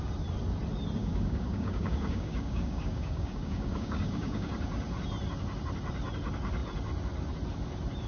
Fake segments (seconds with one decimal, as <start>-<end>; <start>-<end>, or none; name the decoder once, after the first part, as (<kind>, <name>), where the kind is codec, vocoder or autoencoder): 1.0-4.5 (codec, DAC)